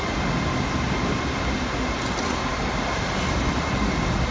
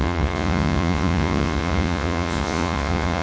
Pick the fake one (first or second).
second